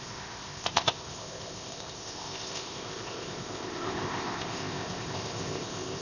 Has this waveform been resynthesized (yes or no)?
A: yes